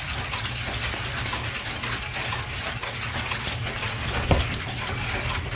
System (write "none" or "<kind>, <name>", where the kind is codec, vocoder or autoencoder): none